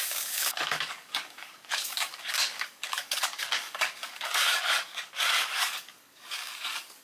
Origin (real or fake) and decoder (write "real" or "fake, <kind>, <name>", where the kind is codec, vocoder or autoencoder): fake, codec, DAC